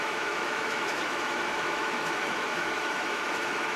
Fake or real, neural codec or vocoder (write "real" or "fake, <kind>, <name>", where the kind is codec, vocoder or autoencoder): fake, autoencoder, DAC-VAE